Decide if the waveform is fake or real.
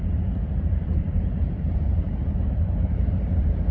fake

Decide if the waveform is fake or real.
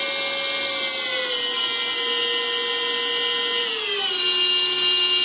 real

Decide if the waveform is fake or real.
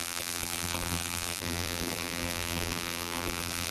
fake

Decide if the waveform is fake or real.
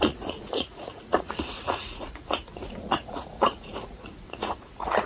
fake